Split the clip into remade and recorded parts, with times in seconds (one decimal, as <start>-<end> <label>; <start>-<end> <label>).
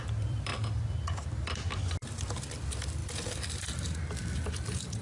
0.0-0.5 remade; 0.5-2.3 recorded; 2.3-5.0 remade